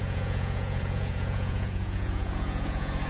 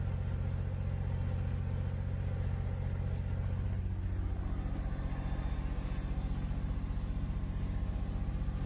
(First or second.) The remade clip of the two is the first